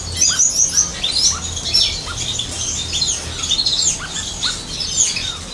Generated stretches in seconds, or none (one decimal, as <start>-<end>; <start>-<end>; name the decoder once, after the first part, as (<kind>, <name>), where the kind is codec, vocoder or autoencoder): none